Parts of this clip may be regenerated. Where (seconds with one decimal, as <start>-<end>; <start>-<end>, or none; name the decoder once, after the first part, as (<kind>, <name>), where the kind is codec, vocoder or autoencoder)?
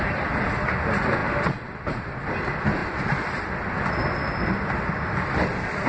none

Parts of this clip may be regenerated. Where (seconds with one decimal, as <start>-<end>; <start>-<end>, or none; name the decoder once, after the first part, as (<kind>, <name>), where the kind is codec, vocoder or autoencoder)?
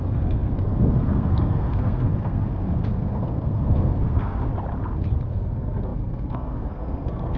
0.0-4.5 (codec, SNAC); 5.3-7.4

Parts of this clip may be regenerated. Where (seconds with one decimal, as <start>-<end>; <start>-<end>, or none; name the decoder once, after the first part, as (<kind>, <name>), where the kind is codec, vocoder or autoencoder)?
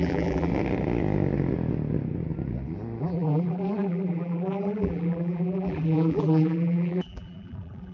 0.0-0.5 (vocoder, BigVGAN v2); 3.0-7.9